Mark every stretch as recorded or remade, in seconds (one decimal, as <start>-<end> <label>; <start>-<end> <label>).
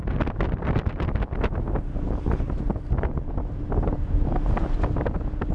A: 0.0-5.5 recorded